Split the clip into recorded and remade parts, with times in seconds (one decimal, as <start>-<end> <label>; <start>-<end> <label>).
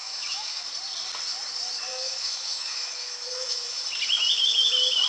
0.0-0.6 remade; 0.6-1.9 recorded; 1.9-3.8 remade; 3.8-5.1 recorded